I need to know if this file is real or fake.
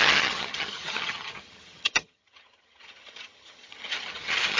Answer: fake